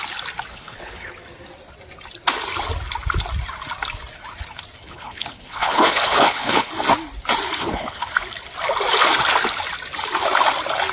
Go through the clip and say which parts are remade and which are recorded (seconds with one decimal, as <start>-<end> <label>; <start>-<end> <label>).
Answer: 0.0-0.5 recorded; 0.5-1.1 remade; 1.1-4.8 recorded; 4.8-6.7 remade; 6.7-7.6 recorded; 7.6-8.1 remade; 8.1-10.9 recorded

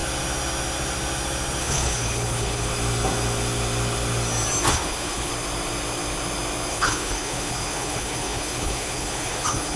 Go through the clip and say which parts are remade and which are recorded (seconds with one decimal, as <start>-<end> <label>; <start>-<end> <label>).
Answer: 0.0-1.6 recorded; 1.6-2.7 remade; 2.7-4.7 recorded; 4.7-5.3 remade; 5.3-6.7 recorded; 6.7-9.8 remade

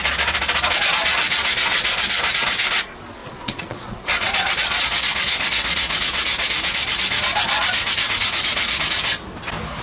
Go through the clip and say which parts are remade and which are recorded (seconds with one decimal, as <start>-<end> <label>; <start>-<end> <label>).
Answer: 0.0-3.2 recorded; 3.2-4.8 remade; 4.8-9.8 recorded

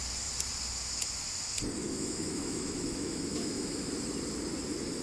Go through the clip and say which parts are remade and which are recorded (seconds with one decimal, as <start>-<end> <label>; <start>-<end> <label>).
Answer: 0.0-1.8 recorded; 1.8-3.9 remade; 3.9-5.0 recorded